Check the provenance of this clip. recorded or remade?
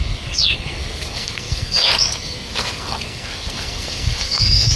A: remade